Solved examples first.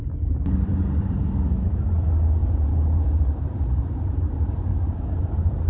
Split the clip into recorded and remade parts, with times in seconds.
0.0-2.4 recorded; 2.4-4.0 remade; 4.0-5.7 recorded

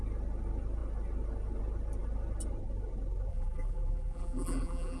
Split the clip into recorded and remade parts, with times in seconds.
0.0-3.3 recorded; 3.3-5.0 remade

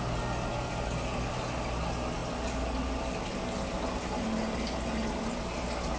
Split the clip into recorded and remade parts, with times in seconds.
0.0-6.0 recorded

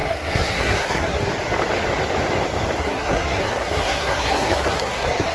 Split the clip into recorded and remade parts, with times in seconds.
0.0-1.3 remade; 1.3-2.8 recorded; 2.8-5.3 remade

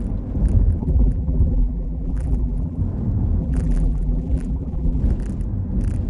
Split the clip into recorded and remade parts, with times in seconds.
0.0-0.8 recorded; 0.8-2.8 remade; 2.8-3.4 recorded; 3.4-5.0 remade; 5.0-6.1 recorded